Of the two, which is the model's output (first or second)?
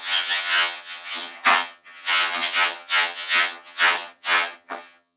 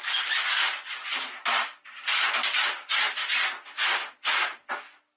first